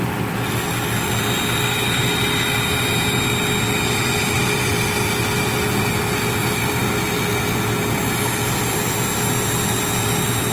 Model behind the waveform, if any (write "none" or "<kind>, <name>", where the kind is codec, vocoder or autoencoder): none